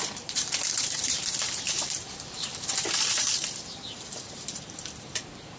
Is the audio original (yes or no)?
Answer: no